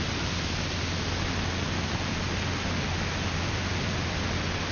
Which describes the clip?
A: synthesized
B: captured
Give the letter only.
B